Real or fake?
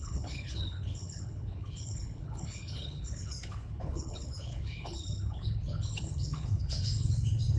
fake